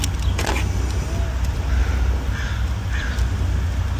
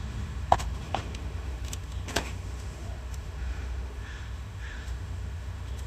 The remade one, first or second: second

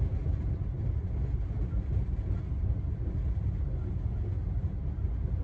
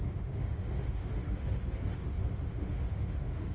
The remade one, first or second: second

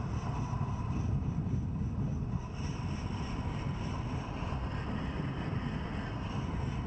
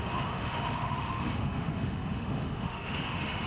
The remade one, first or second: second